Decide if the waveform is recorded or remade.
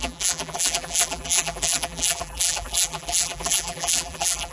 remade